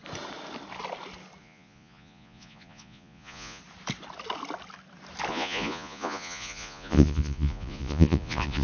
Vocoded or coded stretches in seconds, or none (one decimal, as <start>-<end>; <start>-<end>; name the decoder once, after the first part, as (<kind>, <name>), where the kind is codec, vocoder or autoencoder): 1.4-3.6 (vocoder, Vocos); 5.3-8.6